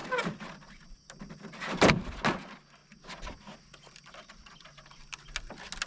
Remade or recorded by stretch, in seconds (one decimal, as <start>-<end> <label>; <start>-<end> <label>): 0.0-5.9 recorded